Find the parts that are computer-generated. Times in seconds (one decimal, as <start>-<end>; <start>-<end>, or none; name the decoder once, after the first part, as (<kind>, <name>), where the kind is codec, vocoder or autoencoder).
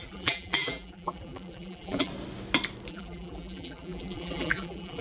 0.0-2.1 (vocoder, BigVGAN v2); 2.9-5.0